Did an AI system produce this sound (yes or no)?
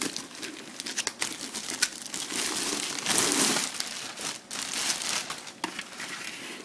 no